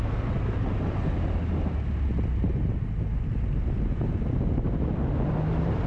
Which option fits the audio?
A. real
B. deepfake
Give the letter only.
A